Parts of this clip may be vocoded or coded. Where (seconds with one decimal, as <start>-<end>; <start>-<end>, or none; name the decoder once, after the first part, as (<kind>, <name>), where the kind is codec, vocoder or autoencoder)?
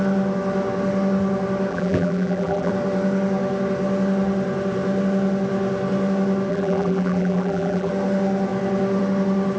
1.7-2.7 (vocoder, BigVGAN v2); 6.5-7.9